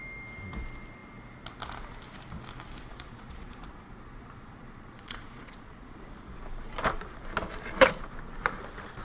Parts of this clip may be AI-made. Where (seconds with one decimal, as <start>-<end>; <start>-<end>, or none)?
2.9-6.0